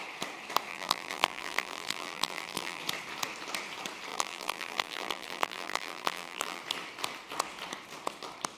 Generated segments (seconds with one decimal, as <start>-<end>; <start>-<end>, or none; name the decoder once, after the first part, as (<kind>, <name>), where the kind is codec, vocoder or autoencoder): 0.7-2.8 (vocoder, BigVGAN v2); 4.1-6.6